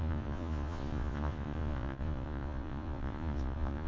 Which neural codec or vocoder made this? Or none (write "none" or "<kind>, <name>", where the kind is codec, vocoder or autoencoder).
vocoder, Vocos